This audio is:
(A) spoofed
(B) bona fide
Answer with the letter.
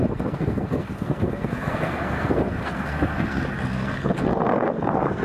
A